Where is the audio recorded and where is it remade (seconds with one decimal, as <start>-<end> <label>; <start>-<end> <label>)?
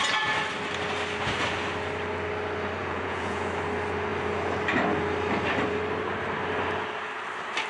0.0-2.8 recorded; 2.8-3.5 remade; 3.5-7.7 recorded